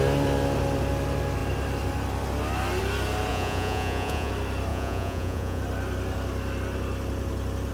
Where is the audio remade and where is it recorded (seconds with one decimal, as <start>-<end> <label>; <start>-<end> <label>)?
0.0-3.3 recorded; 3.3-4.3 remade; 4.3-4.7 recorded; 4.7-5.6 remade; 5.6-7.7 recorded